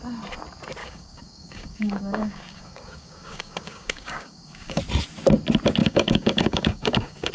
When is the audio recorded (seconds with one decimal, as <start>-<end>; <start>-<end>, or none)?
0.0-0.8; 4.8-5.8